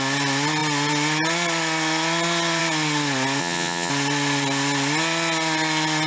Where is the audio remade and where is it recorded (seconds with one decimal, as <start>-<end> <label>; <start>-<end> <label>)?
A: 0.0-3.4 recorded; 3.4-3.9 remade; 3.9-6.1 recorded